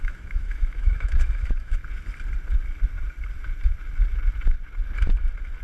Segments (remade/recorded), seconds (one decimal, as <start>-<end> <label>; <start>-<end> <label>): 0.0-1.8 remade; 1.8-5.6 recorded